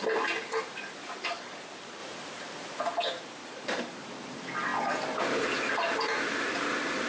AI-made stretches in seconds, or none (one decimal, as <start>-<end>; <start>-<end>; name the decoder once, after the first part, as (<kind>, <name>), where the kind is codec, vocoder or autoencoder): 1.0-1.6 (codec, DAC); 3.4-4.0